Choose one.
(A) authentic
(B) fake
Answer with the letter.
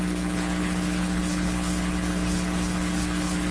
B